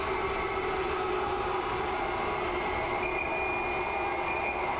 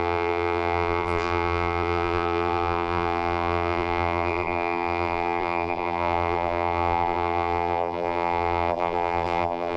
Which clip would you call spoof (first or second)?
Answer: second